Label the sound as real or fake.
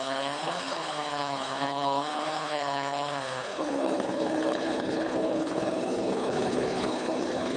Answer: fake